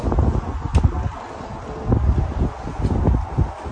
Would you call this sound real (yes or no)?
yes